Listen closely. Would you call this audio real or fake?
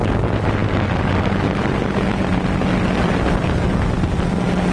real